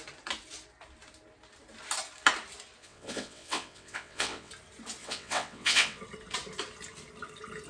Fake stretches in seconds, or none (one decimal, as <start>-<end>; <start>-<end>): 2.8-4.5; 5.0-6.0